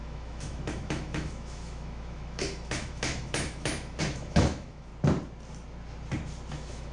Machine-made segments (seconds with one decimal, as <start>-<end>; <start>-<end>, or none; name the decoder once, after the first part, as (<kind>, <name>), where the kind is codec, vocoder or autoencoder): 0.0-4.9 (autoencoder, DAC-VAE); 6.5-6.9